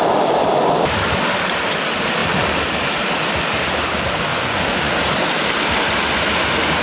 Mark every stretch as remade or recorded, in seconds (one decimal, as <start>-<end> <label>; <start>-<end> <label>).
0.0-4.3 recorded; 4.3-4.9 remade; 4.9-6.8 recorded